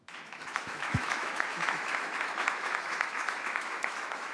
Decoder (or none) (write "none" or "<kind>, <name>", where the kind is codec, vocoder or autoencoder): autoencoder, DAC-VAE